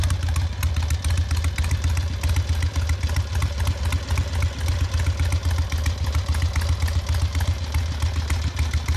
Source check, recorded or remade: recorded